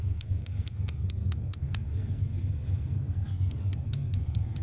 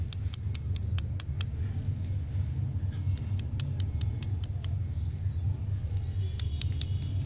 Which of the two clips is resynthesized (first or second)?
first